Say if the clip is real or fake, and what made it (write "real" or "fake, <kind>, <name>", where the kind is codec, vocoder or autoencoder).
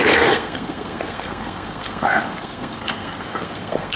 fake, codec, SNAC